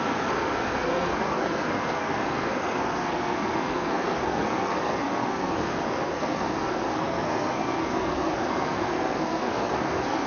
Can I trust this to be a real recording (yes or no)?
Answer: no